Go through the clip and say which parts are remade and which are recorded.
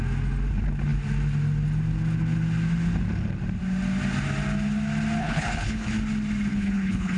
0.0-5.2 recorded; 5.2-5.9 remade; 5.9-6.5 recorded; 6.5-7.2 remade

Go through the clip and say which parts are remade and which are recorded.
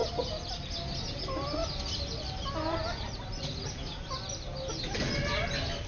0.0-5.9 recorded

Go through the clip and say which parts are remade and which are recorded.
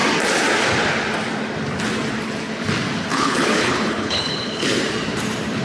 0.0-3.1 recorded; 3.1-4.8 remade; 4.8-5.6 recorded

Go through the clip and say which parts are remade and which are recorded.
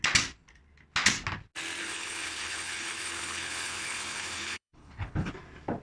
0.0-1.8 recorded; 1.8-5.3 remade; 5.3-5.8 recorded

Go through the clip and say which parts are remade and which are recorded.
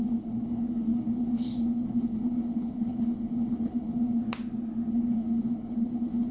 0.0-4.2 remade; 4.2-4.9 recorded; 4.9-6.3 remade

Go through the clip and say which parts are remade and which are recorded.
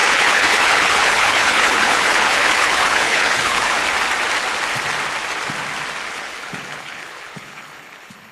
0.0-3.8 remade; 3.8-6.1 recorded; 6.1-8.3 remade